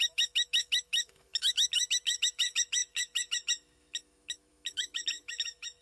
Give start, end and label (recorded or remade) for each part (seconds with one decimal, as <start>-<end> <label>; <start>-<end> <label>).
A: 0.0-5.8 remade